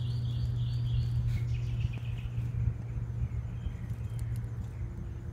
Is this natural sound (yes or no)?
yes